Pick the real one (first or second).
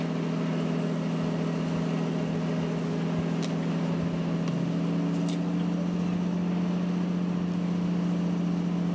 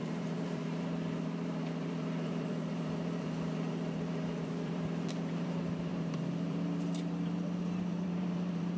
first